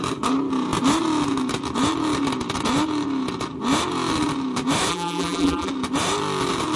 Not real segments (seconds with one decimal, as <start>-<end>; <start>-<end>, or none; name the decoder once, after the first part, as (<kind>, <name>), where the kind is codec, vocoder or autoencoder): 4.9-5.7 (vocoder, BigVGAN v2)